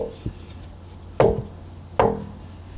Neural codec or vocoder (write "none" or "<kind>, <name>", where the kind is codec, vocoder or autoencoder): none